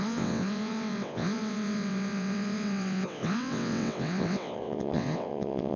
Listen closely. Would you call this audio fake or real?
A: fake